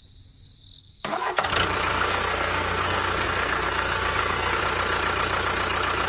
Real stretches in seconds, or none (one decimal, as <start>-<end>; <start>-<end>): 0.0-0.8; 1.5-1.9; 4.6-6.1